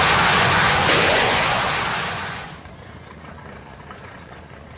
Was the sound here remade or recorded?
remade